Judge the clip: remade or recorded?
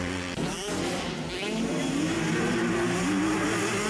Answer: recorded